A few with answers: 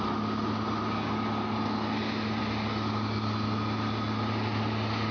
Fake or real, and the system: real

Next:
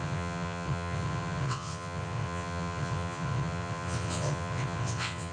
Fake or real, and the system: fake, vocoder, WaveNeXt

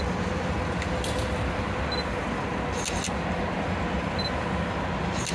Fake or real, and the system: real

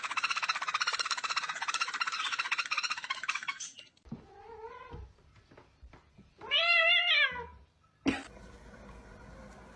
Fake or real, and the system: real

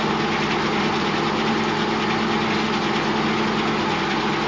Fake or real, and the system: real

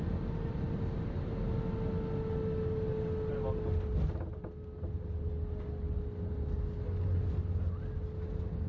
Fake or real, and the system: real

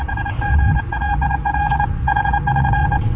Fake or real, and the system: fake, vocoder, WaveNeXt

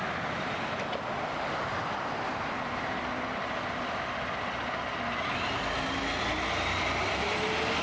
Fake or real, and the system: real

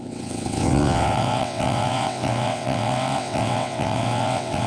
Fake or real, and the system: fake, vocoder, WaveNeXt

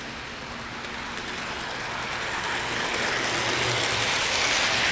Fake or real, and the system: real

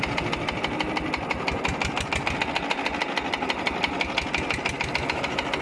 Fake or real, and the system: real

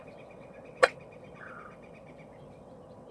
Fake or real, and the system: fake, vocoder, WaveNeXt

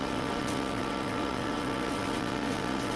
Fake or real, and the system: fake, vocoder, WaveNeXt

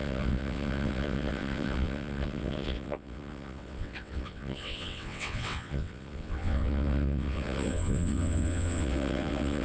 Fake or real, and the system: fake, vocoder, WaveNeXt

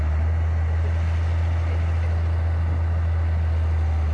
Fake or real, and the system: real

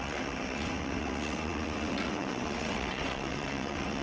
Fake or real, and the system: fake, vocoder, WaveNeXt